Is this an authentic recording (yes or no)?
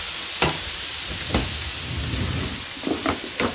yes